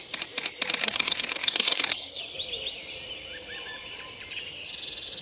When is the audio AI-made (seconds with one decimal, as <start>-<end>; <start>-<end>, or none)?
0.8-2.2